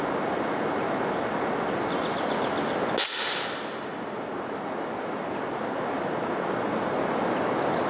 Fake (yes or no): no